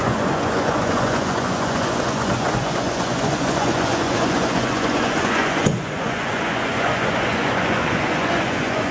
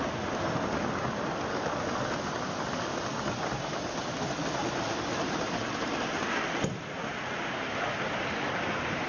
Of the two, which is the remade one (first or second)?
first